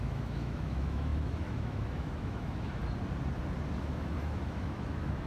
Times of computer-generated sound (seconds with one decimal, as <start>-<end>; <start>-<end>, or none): 0.0-2.8; 3.8-5.3